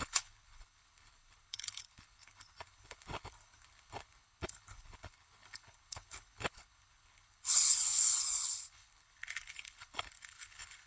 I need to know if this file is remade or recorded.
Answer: remade